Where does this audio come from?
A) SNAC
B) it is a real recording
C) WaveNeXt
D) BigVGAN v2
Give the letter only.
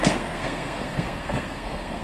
A